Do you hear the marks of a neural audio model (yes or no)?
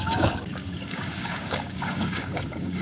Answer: yes